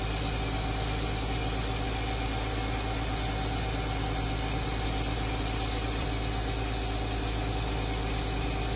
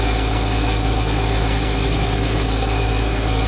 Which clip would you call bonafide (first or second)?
first